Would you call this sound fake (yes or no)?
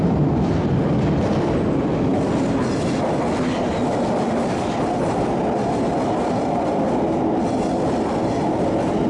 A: no